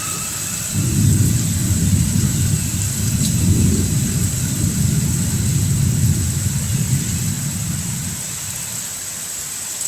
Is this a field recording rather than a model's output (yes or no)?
yes